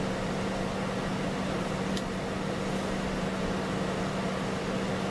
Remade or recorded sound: recorded